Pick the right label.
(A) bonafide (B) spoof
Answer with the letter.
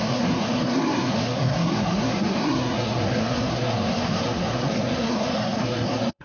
B